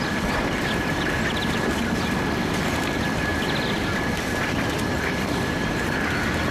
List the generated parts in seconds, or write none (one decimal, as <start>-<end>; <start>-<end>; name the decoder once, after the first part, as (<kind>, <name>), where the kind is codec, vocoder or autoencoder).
none